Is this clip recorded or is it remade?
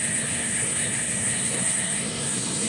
remade